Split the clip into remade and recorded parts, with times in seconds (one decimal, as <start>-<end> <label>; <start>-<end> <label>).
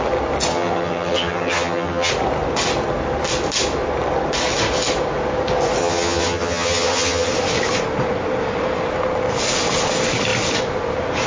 0.0-0.5 recorded; 0.5-2.1 remade; 2.1-5.8 recorded; 5.8-7.3 remade; 7.3-11.3 recorded